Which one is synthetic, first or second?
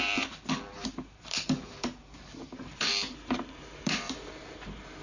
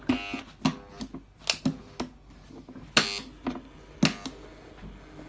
first